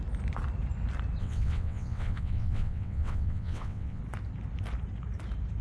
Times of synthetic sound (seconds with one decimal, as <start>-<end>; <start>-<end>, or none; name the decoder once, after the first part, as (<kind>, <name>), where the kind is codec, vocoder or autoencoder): 1.2-4.0 (vocoder, WaveNeXt)